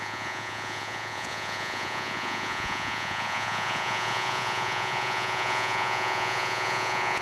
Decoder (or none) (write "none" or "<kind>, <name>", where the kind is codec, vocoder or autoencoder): vocoder, Vocos